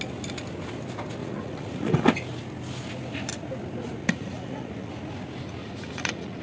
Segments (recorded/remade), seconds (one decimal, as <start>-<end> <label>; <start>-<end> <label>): 0.0-1.2 recorded; 1.2-2.1 remade; 2.1-4.0 recorded; 4.0-4.9 remade; 4.9-5.6 recorded; 5.6-6.4 remade